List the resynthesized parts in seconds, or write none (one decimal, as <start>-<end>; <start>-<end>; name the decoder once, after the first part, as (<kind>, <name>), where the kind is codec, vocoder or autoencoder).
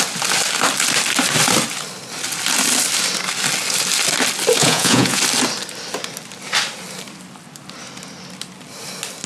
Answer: 4.6-5.2 (vocoder, Vocos)